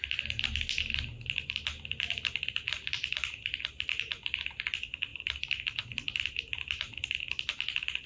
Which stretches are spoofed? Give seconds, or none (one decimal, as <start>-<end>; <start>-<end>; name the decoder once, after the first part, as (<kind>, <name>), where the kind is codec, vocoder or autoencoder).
none